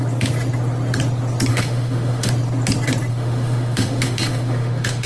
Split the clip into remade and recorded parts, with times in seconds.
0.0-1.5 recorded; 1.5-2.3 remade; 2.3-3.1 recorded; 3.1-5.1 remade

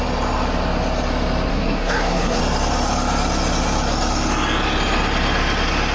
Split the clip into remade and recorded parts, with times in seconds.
0.0-1.5 recorded; 1.5-2.4 remade; 2.4-5.9 recorded

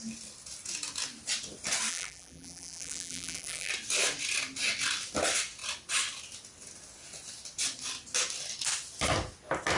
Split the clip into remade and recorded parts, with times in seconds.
0.0-1.9 recorded; 1.9-3.7 remade; 3.7-9.8 recorded

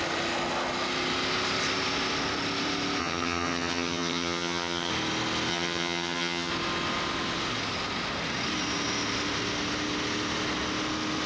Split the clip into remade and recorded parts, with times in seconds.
0.0-3.0 recorded; 3.0-4.9 remade; 4.9-5.5 recorded; 5.5-6.5 remade; 6.5-11.3 recorded

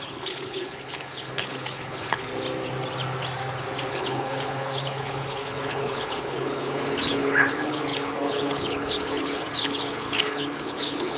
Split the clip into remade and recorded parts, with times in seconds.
0.0-2.3 remade; 2.3-3.9 recorded; 3.9-11.2 remade